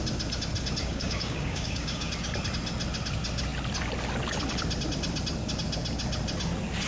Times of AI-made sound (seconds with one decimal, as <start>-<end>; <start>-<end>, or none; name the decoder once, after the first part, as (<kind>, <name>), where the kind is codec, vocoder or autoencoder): 0.8-2.1 (codec, DAC)